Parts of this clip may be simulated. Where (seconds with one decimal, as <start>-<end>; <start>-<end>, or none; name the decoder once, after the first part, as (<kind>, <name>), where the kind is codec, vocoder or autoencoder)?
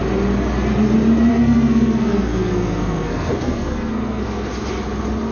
1.3-4.5 (codec, SNAC)